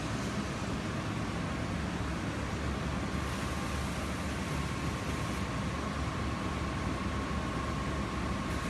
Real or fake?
real